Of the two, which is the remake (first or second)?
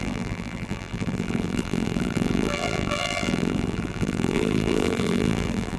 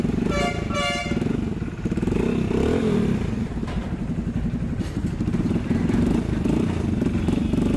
first